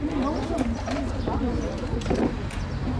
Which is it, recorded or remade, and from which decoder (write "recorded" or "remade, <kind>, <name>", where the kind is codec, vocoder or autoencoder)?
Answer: recorded